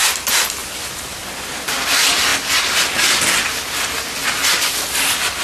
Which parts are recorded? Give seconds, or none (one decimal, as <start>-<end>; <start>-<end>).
0.0-5.4